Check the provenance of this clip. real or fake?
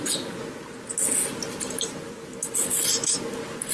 real